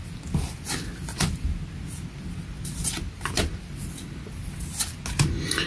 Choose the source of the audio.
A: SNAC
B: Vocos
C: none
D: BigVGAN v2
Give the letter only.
C